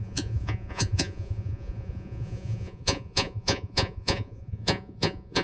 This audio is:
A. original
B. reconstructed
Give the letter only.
B